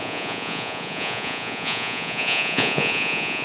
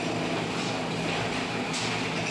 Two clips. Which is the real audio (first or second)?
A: second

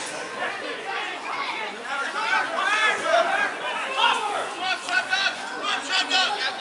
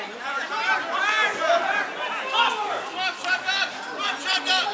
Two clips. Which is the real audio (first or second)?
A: second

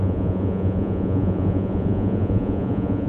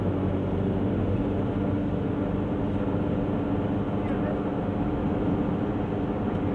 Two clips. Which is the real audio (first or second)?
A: second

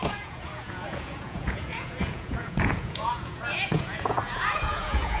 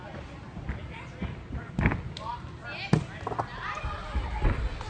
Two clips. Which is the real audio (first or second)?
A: second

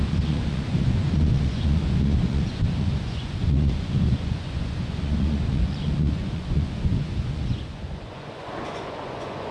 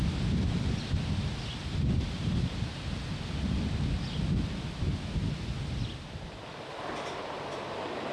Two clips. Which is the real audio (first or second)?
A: second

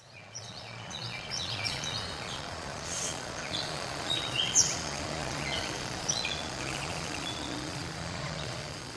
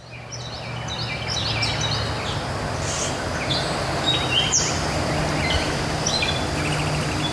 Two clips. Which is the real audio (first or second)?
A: second